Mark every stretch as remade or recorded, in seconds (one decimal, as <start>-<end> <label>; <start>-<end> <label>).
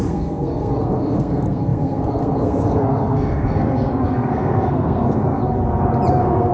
0.0-5.4 remade; 5.4-6.1 recorded; 6.1-6.5 remade